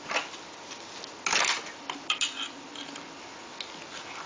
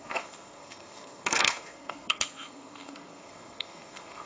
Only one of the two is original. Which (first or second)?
first